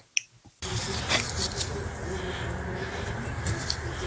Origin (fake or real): real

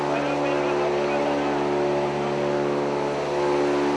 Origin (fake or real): real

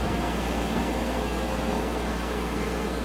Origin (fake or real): fake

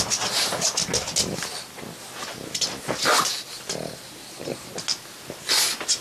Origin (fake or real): real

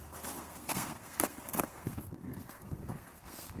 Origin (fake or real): fake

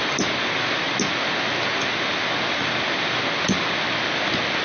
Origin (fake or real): real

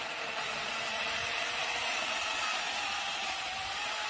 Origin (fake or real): real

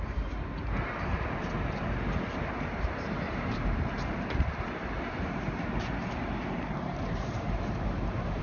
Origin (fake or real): fake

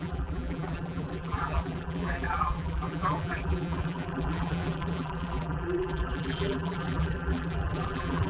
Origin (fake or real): fake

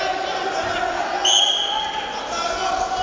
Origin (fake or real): real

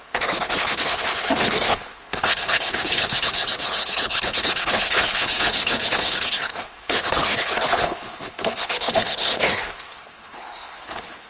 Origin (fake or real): fake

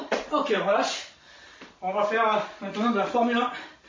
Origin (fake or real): real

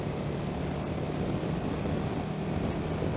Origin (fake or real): real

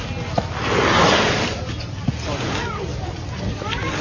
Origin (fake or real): real